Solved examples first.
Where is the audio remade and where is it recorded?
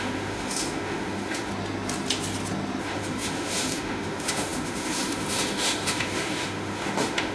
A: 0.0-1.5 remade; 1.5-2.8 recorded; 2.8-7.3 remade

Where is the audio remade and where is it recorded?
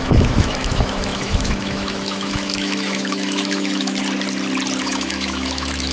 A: 0.0-4.0 remade; 4.0-4.8 recorded; 4.8-5.9 remade